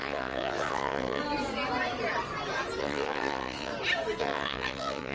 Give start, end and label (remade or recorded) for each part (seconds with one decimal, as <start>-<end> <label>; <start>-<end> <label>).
0.0-1.2 remade; 1.2-2.8 recorded; 2.8-3.7 remade; 3.7-4.2 recorded; 4.2-5.1 remade